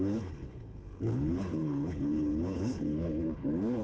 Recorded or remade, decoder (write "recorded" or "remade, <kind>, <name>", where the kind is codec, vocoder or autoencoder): remade, codec, HILCodec